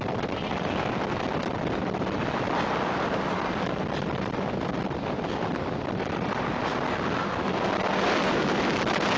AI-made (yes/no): yes